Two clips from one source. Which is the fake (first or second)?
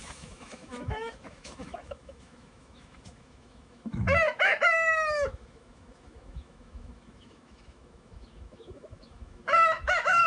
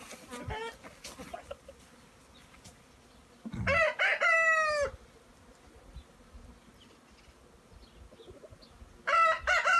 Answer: first